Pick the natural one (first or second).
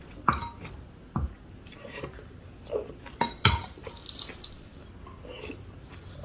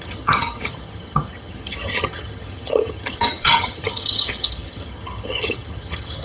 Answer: first